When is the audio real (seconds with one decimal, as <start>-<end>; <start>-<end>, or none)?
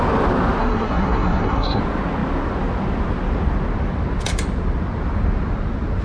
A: 0.0-0.6; 1.8-6.0